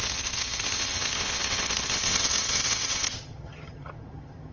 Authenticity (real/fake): fake